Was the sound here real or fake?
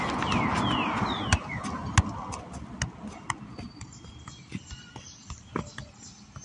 real